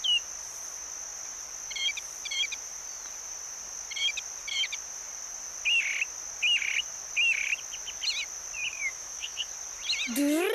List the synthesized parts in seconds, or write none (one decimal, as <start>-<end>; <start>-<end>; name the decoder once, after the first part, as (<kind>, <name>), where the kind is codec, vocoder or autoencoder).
8.6-9.5 (autoencoder, DAC-VAE)